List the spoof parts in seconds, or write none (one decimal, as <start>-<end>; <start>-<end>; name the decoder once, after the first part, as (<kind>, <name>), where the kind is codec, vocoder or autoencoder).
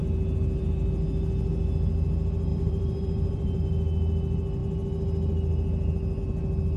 2.5-3.6 (vocoder, BigVGAN v2)